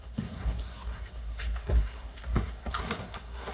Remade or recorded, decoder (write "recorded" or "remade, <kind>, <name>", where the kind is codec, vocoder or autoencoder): remade, codec, SNAC